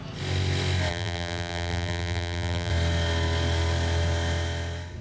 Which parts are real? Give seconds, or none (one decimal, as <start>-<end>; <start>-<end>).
0.0-0.9; 2.7-5.0